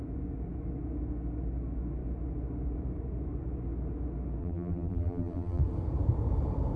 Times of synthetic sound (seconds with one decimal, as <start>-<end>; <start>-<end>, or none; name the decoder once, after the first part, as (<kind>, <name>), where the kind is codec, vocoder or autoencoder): 4.4-5.6 (vocoder, BigVGAN v2)